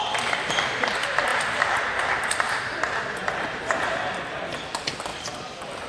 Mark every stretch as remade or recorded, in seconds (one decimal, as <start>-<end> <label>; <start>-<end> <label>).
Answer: 0.0-1.3 recorded; 1.3-2.0 remade; 2.0-5.1 recorded; 5.1-5.9 remade